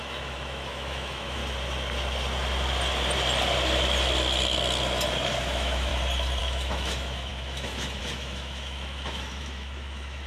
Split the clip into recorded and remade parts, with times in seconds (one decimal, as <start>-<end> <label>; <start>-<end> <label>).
0.0-1.4 remade; 1.4-5.4 recorded; 5.4-5.9 remade; 5.9-6.4 recorded; 6.4-10.3 remade